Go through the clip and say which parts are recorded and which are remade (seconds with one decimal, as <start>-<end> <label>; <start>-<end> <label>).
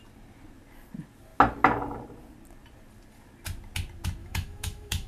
0.0-4.2 recorded; 4.2-5.1 remade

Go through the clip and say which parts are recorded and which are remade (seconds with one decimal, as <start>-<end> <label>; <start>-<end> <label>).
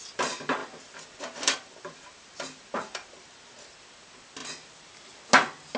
0.0-0.6 recorded; 0.6-3.6 remade; 3.6-5.8 recorded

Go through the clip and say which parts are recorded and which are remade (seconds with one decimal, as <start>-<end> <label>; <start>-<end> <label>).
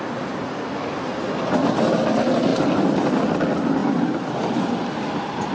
0.0-5.5 recorded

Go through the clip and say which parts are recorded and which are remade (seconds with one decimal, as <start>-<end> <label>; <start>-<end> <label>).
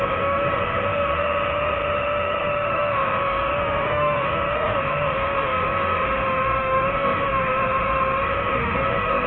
0.0-9.3 remade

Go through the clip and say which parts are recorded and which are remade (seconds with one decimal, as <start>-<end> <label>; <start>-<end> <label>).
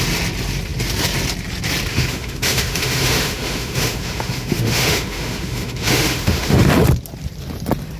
0.0-1.9 recorded; 1.9-6.7 remade; 6.7-8.0 recorded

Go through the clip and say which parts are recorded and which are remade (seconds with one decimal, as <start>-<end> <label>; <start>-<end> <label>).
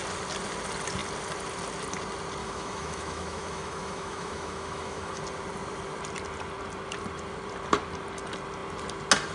0.0-2.4 recorded; 2.4-5.2 remade; 5.2-9.3 recorded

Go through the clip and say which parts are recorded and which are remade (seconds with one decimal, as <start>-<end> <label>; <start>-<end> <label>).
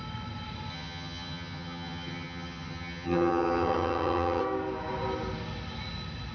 0.0-0.7 recorded; 0.7-4.4 remade; 4.4-6.3 recorded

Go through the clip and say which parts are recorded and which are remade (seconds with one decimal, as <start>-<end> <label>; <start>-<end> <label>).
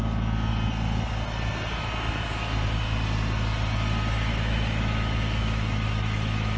0.0-4.3 recorded; 4.3-6.6 remade